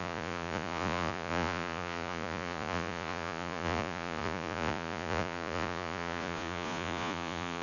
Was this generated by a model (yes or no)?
yes